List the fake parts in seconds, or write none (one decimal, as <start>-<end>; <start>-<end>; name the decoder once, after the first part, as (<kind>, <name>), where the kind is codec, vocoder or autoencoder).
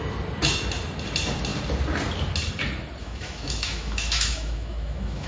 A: 3.0-5.3 (autoencoder, DAC-VAE)